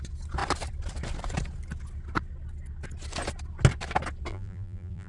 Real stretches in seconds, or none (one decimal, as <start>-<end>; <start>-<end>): 0.0-4.3